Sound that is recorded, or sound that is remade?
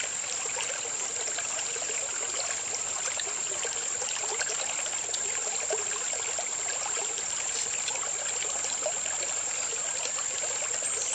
recorded